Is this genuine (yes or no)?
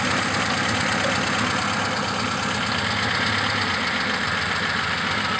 yes